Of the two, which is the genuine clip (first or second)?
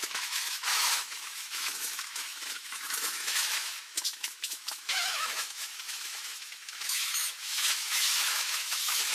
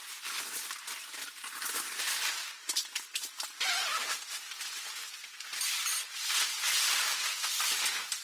second